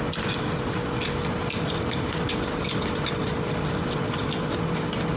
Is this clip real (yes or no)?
yes